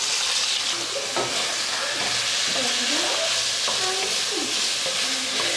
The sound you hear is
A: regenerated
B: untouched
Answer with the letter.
B